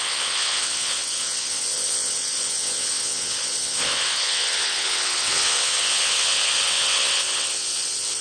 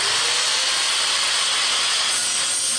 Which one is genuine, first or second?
second